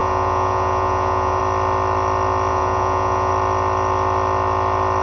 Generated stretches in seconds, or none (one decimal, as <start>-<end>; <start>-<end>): 0.0-1.4; 2.5-3.3